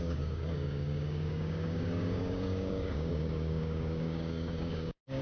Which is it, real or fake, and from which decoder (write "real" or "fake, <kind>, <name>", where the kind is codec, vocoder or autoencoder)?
fake, codec, DAC